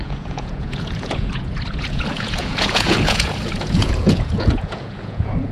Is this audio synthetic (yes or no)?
yes